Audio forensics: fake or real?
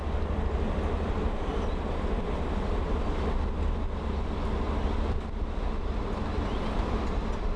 real